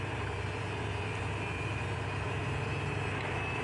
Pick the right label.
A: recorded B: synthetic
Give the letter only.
A